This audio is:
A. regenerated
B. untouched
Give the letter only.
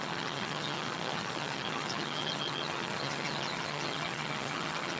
A